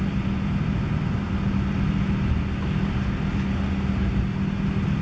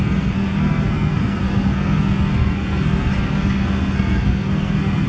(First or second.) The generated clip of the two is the second